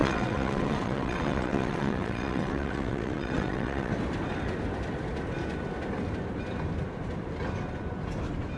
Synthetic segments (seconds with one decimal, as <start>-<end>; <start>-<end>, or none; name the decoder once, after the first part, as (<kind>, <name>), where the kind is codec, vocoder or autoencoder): 0.0-3.9 (vocoder, WaveNeXt)